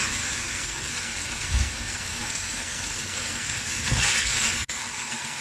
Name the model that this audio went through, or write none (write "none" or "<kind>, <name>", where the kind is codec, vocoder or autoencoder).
codec, SNAC